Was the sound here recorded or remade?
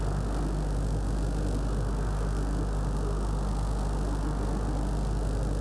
recorded